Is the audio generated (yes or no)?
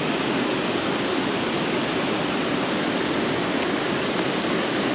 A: no